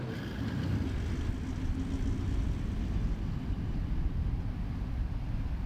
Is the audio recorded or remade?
recorded